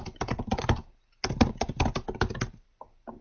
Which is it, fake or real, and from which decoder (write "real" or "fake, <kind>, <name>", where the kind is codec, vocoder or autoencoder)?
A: real